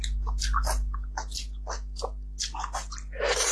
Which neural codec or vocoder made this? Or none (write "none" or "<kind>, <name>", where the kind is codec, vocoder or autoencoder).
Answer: none